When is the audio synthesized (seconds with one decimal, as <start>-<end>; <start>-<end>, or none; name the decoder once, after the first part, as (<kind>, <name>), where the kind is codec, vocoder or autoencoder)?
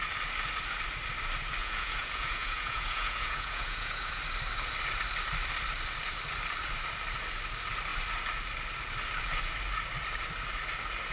1.6-4.2 (vocoder, Vocos)